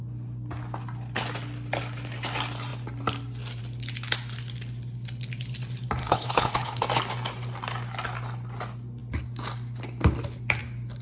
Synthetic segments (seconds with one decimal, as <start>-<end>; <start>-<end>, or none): 6.0-6.8